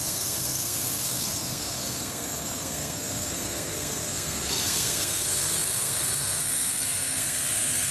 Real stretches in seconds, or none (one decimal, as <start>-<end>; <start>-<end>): none